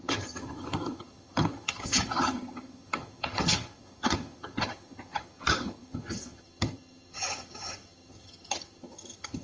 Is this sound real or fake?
fake